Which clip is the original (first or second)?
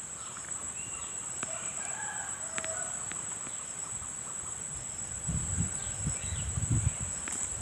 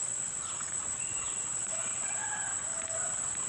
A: first